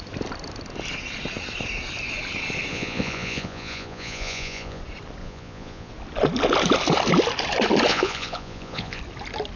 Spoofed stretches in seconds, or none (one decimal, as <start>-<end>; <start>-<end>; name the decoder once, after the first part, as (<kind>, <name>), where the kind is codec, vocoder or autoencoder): 2.7-4.8 (vocoder, Vocos); 5.2-5.9; 7.9-9.0